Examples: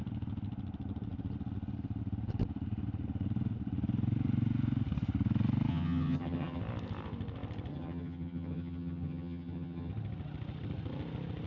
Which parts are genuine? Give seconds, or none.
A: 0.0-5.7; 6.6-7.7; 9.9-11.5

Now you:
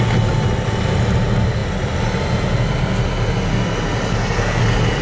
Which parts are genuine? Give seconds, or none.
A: 0.0-4.1; 4.6-5.0

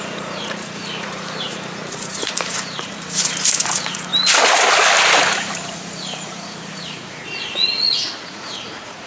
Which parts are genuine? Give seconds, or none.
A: 4.1-5.2